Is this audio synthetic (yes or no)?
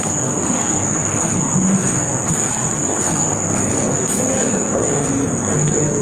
yes